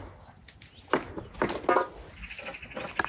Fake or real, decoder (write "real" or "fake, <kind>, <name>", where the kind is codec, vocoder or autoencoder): real